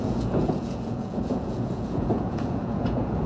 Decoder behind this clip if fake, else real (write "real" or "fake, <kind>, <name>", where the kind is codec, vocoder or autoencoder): fake, vocoder, Vocos